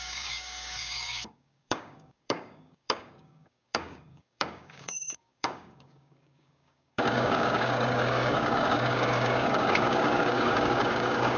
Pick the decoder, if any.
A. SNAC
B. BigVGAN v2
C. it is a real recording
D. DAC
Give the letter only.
D